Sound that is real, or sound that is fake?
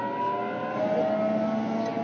real